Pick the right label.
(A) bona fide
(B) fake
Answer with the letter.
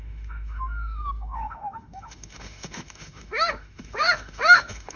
B